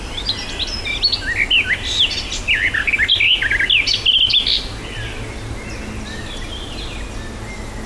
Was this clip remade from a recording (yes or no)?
no